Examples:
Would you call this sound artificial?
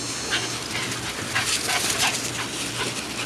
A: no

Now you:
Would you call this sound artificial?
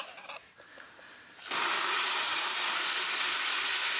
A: no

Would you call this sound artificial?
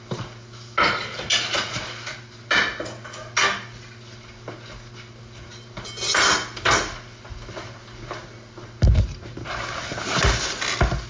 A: no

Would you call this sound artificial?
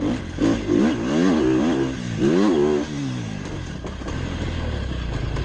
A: no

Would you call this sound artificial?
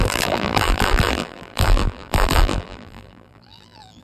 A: yes